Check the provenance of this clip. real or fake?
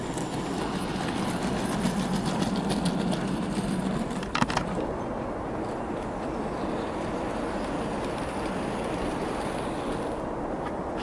real